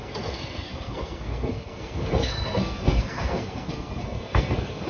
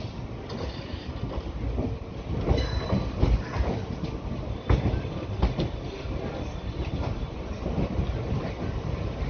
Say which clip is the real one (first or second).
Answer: second